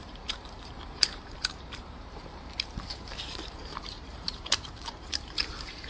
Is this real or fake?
fake